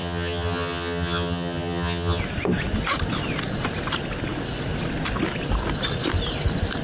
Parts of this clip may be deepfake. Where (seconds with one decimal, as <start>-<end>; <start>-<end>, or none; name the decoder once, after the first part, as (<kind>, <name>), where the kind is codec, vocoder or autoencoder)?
0.0-2.2 (vocoder, HiFi-GAN)